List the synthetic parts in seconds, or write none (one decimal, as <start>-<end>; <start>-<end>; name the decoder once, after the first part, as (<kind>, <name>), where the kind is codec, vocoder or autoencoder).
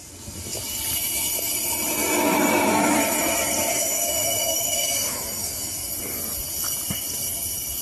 2.3-3.0 (autoencoder, DAC-VAE); 3.7-5.9